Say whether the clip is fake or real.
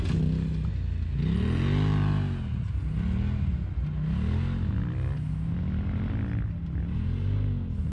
real